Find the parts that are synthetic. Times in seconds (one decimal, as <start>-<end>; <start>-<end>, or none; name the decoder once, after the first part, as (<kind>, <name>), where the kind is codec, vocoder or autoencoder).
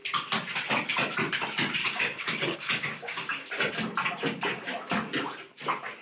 1.8-3.5 (codec, DAC)